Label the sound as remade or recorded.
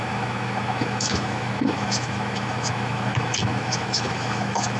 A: remade